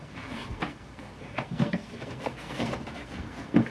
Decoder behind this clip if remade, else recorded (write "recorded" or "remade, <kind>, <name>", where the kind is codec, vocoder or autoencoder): remade, codec, SNAC